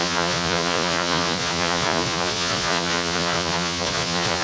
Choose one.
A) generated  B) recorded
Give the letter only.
A